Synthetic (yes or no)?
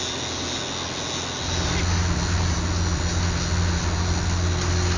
no